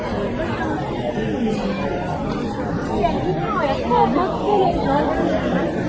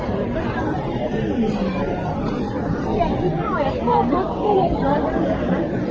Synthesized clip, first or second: second